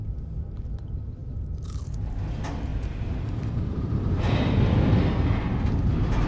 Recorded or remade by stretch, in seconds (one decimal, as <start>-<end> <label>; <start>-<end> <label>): 0.0-1.2 recorded; 1.2-2.2 remade; 2.2-2.7 recorded; 2.7-4.5 remade; 4.5-6.3 recorded